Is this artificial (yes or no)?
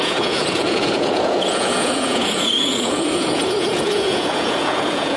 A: yes